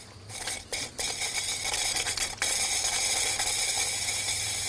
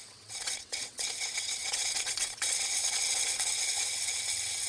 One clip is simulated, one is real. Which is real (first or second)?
first